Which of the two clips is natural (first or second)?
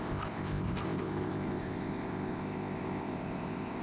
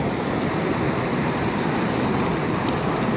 second